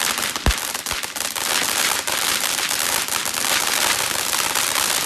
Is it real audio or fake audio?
real